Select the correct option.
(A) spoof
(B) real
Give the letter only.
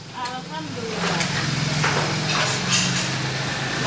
B